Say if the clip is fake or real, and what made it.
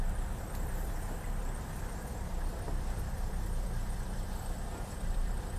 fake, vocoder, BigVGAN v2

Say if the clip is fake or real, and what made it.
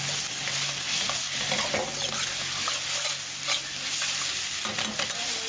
real